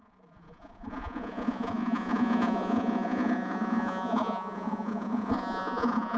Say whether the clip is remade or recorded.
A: remade